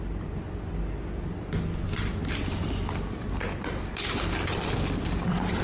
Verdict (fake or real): real